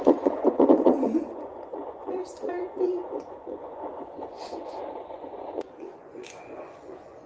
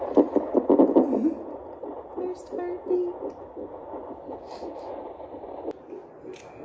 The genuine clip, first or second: second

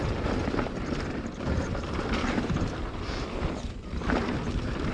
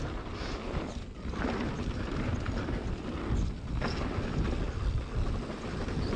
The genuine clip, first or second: second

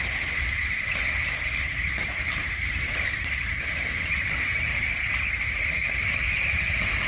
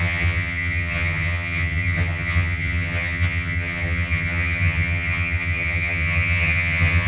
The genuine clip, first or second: first